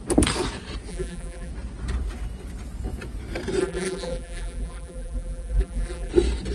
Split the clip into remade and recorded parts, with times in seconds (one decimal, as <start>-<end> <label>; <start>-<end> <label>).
0.0-0.9 recorded; 0.9-1.5 remade; 1.5-3.6 recorded; 3.6-6.1 remade; 6.1-6.5 recorded

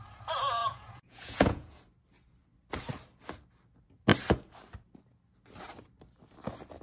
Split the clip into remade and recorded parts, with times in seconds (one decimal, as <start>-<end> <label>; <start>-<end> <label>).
0.0-0.6 recorded; 0.6-1.8 remade; 1.8-6.8 recorded

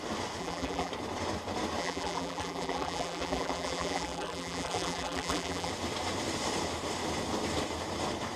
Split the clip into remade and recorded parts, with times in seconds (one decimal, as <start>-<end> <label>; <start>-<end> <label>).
0.0-0.4 recorded; 0.4-0.9 remade; 0.9-1.8 recorded; 1.8-5.7 remade; 5.7-8.4 recorded

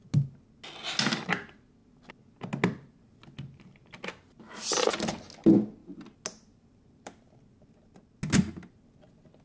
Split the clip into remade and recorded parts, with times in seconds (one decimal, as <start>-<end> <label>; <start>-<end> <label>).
0.0-9.4 recorded

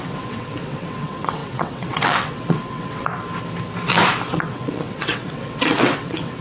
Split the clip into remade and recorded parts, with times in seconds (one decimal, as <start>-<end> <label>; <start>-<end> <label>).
0.0-3.1 remade; 3.1-4.3 recorded; 4.3-6.4 remade

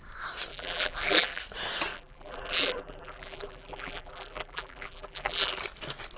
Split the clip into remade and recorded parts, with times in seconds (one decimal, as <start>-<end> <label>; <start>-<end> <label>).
0.0-0.5 recorded; 0.5-1.4 remade; 1.4-1.9 recorded; 1.9-5.6 remade; 5.6-6.2 recorded

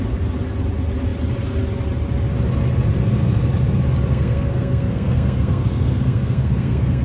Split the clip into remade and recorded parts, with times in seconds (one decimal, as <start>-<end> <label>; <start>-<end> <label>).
0.0-4.1 recorded; 4.1-7.0 remade

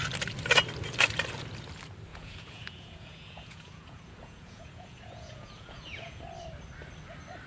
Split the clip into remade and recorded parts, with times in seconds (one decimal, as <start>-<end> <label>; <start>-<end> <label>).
0.0-2.1 recorded; 2.1-6.2 remade; 6.2-7.5 recorded